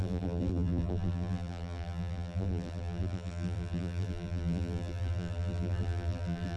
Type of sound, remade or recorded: remade